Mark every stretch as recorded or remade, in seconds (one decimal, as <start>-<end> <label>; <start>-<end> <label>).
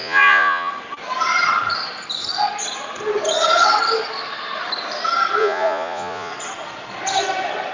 0.0-0.7 remade; 0.7-5.4 recorded; 5.4-6.3 remade; 6.3-7.7 recorded